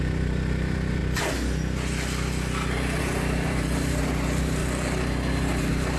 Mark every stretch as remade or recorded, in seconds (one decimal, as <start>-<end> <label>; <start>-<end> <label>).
0.0-1.0 remade; 1.0-3.0 recorded; 3.0-4.6 remade; 4.6-5.3 recorded; 5.3-6.0 remade